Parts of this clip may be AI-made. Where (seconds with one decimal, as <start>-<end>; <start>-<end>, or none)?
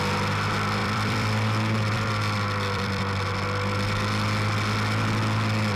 0.8-3.0